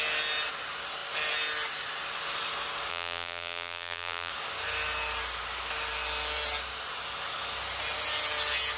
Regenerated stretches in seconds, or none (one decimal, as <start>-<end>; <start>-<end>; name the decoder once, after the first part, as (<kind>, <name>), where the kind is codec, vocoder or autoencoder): 2.9-4.3 (vocoder, BigVGAN v2)